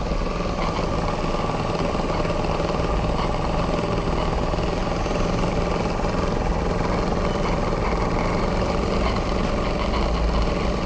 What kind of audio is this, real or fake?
real